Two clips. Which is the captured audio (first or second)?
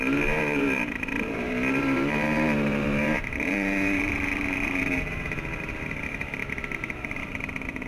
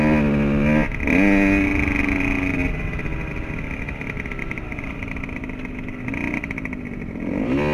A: second